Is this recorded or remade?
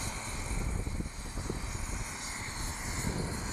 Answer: recorded